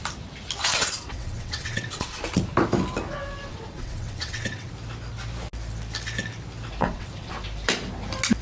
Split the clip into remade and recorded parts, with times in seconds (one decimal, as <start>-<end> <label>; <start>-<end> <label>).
0.0-0.6 recorded; 0.6-2.2 remade; 2.2-3.5 recorded; 3.5-4.7 remade; 4.7-6.8 recorded; 6.8-7.3 remade; 7.3-8.4 recorded